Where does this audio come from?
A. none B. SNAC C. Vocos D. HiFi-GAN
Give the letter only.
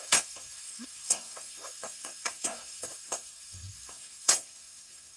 B